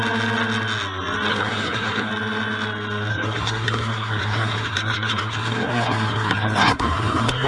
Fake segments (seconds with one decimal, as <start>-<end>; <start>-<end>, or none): 1.3-2.1; 3.1-7.5